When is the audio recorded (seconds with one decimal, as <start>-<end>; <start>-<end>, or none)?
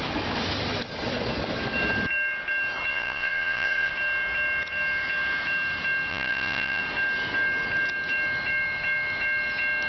0.0-2.9; 3.9-6.1; 6.8-9.9